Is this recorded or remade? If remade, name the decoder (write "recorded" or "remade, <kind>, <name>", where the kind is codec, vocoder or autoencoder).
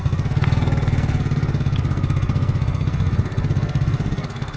remade, codec, SNAC